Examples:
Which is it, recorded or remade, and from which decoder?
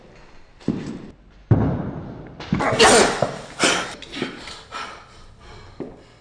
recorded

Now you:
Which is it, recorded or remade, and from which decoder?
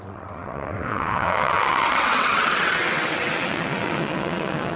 remade, vocoder, WaveNeXt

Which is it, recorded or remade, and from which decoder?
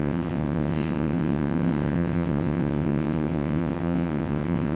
remade, vocoder, WaveNeXt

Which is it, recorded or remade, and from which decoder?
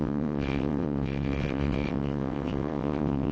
remade, vocoder, WaveNeXt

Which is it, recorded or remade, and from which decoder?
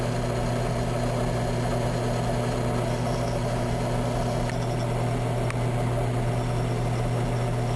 recorded